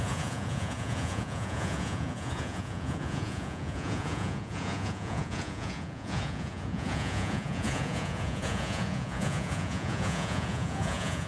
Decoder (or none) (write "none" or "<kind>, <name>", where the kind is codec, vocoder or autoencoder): vocoder, Vocos